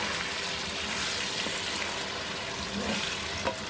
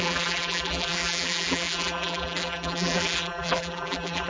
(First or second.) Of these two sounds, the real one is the first